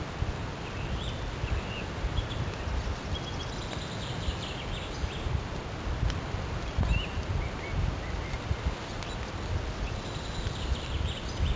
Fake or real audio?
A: real